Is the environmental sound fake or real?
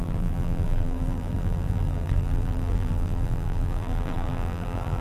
fake